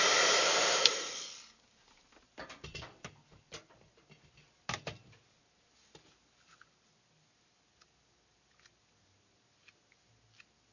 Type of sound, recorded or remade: recorded